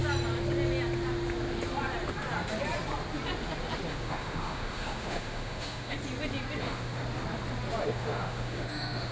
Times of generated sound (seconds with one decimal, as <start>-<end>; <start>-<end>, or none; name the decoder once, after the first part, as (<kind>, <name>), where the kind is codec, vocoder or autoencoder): 3.9-6.0 (autoencoder, DAC-VAE); 6.6-7.0; 7.8-9.1